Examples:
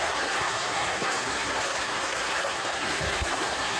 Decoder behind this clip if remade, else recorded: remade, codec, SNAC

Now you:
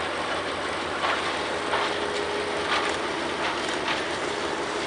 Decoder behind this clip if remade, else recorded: recorded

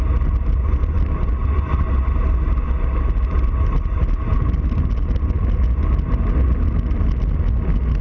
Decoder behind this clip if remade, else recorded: recorded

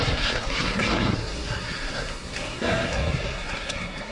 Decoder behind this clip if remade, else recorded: remade, codec, SNAC